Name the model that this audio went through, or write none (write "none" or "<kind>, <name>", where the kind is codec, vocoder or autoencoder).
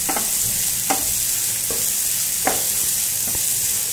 none